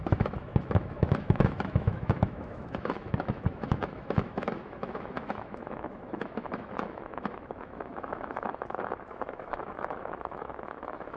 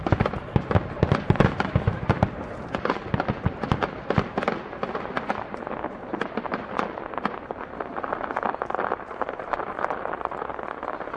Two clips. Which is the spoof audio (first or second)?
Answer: first